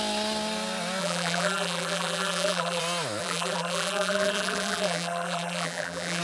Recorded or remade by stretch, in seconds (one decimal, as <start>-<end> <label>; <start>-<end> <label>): 0.0-1.0 recorded; 1.0-2.8 remade; 2.8-3.2 recorded; 3.2-6.2 remade